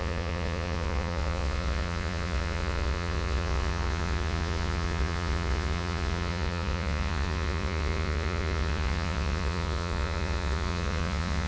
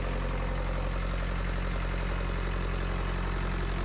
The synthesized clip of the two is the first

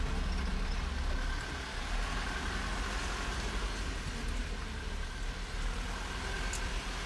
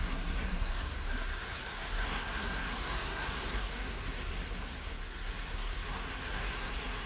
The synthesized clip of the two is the second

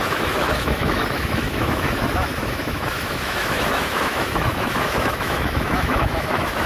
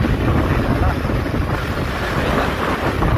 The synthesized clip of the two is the first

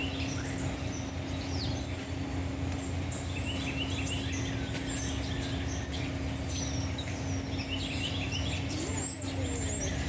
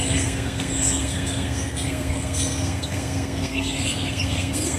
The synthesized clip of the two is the second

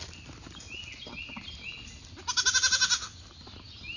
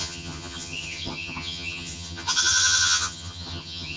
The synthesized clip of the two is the second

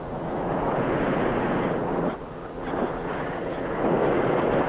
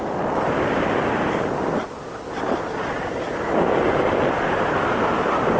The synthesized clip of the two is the first